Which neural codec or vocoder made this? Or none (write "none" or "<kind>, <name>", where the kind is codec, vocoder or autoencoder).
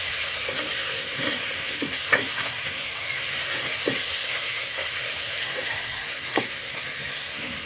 codec, SNAC